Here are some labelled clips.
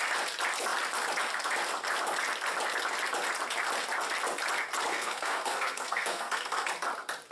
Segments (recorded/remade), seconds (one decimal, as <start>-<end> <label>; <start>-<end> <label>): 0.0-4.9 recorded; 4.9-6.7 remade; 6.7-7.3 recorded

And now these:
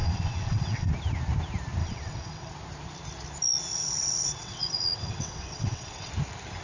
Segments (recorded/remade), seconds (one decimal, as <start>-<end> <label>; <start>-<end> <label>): 0.0-0.9 remade; 0.9-1.8 recorded; 1.8-2.5 remade; 2.5-3.7 recorded; 3.7-6.1 remade; 6.1-6.6 recorded

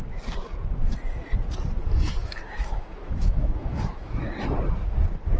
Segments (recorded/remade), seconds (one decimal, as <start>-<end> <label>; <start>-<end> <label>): 0.0-2.2 recorded; 2.2-4.2 remade; 4.2-5.4 recorded

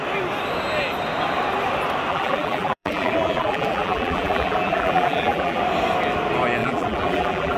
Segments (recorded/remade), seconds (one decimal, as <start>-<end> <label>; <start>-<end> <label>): 0.0-2.1 recorded; 2.1-5.6 remade; 5.6-6.6 recorded; 6.6-7.6 remade

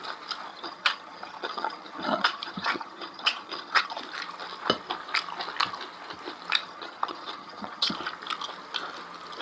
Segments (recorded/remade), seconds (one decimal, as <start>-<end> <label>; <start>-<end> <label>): 0.0-0.5 recorded; 0.5-4.0 remade; 4.0-6.6 recorded; 6.6-7.9 remade; 7.9-9.4 recorded

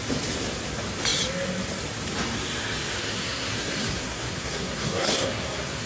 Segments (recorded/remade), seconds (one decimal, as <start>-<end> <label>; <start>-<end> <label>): 0.0-3.1 recorded; 3.1-5.9 remade

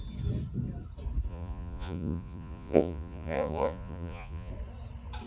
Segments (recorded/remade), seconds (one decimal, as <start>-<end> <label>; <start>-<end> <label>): 0.0-1.3 recorded; 1.3-4.5 remade; 4.5-5.3 recorded

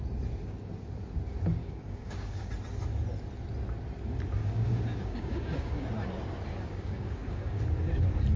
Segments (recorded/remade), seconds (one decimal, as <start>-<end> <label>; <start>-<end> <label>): 0.0-1.6 recorded; 1.6-2.5 remade; 2.5-4.4 recorded; 4.4-5.9 remade; 5.9-6.5 recorded; 6.5-7.6 remade; 7.6-8.4 recorded